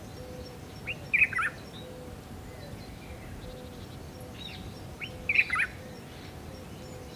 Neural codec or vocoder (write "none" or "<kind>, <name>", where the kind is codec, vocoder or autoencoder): none